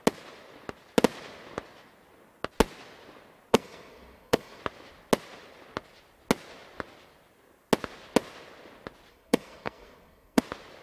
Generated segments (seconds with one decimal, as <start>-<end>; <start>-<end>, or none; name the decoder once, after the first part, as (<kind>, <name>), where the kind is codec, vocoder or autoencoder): 3.5-4.6 (codec, SNAC); 9.1-10.4